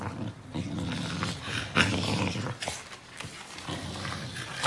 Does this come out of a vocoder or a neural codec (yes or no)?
no